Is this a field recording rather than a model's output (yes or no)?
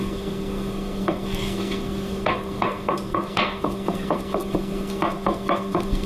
no